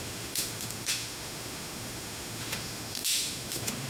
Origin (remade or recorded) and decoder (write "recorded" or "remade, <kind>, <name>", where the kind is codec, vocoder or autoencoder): remade, autoencoder, DAC-VAE